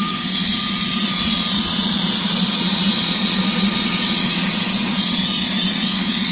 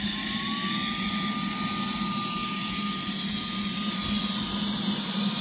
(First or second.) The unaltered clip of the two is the second